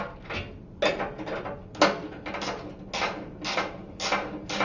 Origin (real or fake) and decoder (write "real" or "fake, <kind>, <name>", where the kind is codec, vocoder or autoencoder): real